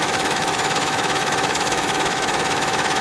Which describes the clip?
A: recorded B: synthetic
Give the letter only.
B